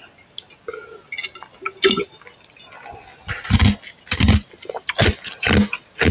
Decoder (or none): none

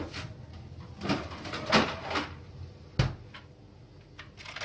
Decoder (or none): none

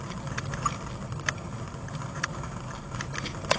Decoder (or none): none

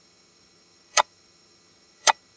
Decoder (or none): vocoder, HiFi-GAN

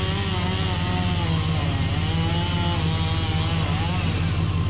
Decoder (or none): none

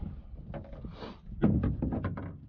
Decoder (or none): none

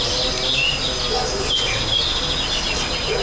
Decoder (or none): none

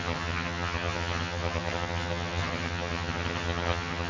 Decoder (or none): vocoder, HiFi-GAN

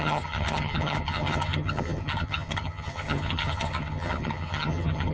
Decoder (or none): vocoder, HiFi-GAN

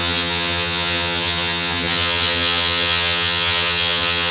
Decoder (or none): vocoder, HiFi-GAN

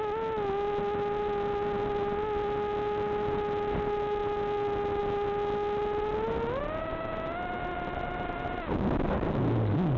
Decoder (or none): none